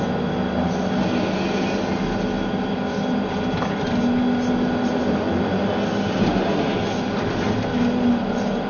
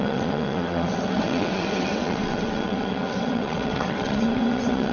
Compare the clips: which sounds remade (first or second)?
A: second